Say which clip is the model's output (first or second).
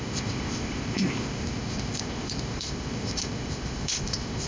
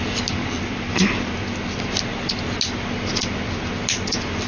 first